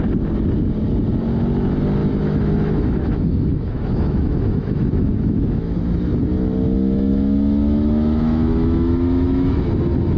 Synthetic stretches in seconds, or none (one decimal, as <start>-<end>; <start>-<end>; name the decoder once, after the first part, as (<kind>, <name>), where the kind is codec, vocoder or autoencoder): 2.0-6.2 (autoencoder, DAC-VAE); 7.1-9.6